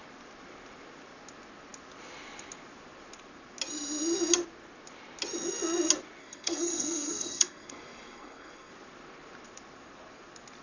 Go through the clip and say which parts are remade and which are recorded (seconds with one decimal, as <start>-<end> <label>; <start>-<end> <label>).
0.0-6.2 recorded; 6.2-8.7 remade; 8.7-10.6 recorded